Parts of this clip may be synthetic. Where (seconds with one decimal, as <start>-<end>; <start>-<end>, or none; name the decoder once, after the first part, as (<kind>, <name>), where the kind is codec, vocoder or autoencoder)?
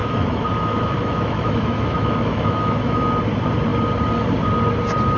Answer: 0.0-3.1 (autoencoder, DAC-VAE)